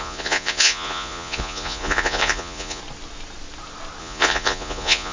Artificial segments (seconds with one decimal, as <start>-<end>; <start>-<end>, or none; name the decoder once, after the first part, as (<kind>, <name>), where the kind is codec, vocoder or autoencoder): 0.0-2.8 (vocoder, Vocos); 4.0-5.1